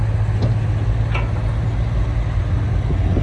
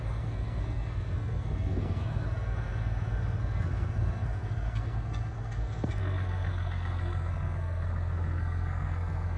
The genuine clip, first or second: first